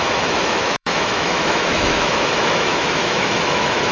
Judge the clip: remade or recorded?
remade